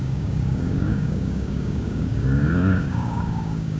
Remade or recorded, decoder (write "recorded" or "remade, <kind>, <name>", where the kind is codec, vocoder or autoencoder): remade, codec, DAC